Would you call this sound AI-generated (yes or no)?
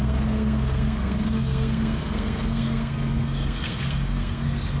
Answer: yes